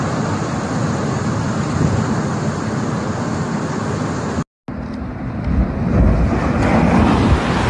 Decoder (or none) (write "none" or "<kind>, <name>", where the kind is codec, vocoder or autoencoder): none